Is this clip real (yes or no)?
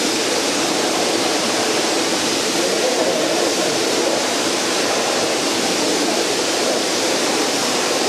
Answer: no